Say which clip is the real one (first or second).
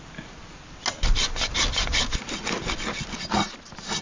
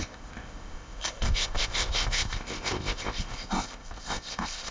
first